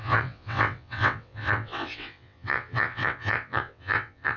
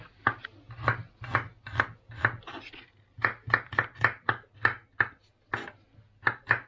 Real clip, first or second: second